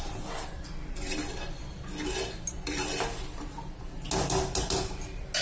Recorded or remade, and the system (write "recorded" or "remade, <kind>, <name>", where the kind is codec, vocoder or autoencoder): recorded